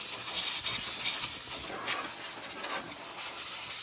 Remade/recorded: remade